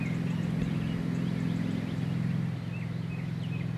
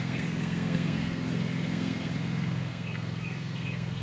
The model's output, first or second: second